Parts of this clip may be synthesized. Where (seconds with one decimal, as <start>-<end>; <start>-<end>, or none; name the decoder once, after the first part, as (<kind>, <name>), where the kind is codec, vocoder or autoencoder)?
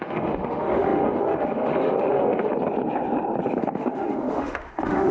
0.0-2.5 (autoencoder, DAC-VAE); 3.6-5.1